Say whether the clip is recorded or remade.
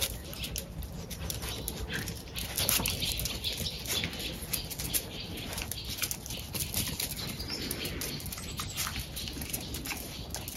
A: recorded